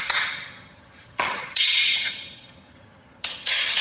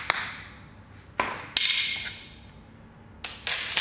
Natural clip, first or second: second